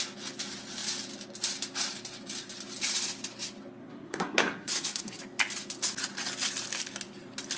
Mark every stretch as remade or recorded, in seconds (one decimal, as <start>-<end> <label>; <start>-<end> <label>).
0.0-3.8 recorded; 3.8-5.2 remade; 5.2-7.6 recorded

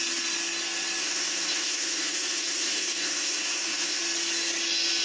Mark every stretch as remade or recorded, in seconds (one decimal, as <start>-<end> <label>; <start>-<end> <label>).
0.0-1.0 recorded; 1.0-4.0 remade; 4.0-5.0 recorded

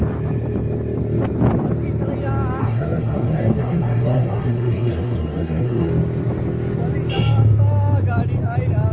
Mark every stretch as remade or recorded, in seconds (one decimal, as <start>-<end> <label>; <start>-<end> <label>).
0.0-2.6 recorded; 2.6-5.9 remade; 5.9-8.9 recorded

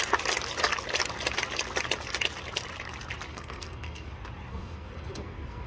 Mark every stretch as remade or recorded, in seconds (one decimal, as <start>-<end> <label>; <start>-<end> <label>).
0.0-3.3 recorded; 3.3-4.1 remade; 4.1-4.5 recorded; 4.5-5.7 remade

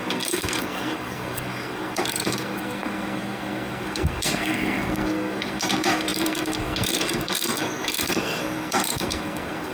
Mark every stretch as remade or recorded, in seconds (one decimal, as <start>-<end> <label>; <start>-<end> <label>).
0.0-9.7 remade

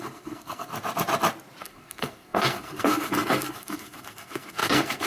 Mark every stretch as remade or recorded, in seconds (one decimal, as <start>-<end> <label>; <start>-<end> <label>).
0.0-0.7 remade; 0.7-1.6 recorded; 1.6-5.1 remade